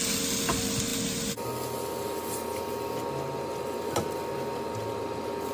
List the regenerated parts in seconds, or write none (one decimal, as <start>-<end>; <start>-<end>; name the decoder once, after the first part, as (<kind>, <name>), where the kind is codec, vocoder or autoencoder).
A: none